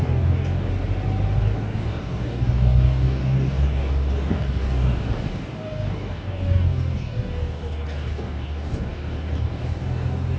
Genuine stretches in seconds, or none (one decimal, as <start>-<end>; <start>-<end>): 0.7-1.4